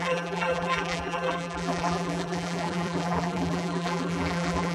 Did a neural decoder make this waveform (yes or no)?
yes